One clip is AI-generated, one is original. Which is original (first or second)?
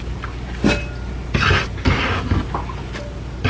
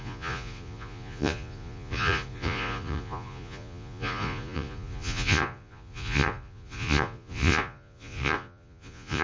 first